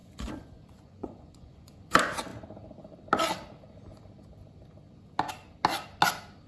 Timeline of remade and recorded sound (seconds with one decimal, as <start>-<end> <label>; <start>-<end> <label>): 0.0-1.9 remade; 1.9-6.5 recorded